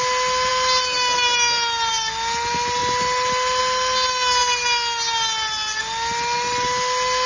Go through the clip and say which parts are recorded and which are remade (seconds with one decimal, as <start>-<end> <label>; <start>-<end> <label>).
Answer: 0.0-7.3 recorded